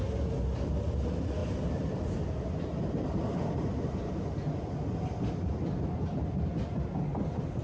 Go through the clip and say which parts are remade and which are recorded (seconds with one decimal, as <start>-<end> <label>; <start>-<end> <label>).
0.0-7.6 recorded